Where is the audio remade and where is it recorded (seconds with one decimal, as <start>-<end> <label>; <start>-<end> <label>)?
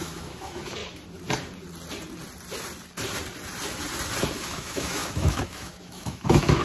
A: 0.0-0.8 remade; 0.8-4.3 recorded; 4.3-6.6 remade